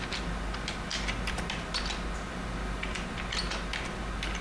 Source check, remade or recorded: recorded